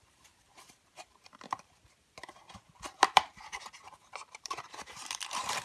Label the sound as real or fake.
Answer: fake